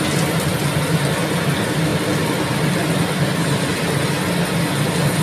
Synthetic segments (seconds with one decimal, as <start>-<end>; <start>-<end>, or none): 0.5-1.0